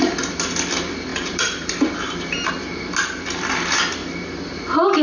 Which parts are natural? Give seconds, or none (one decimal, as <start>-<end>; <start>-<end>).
0.0-1.1; 2.5-4.0; 4.6-5.0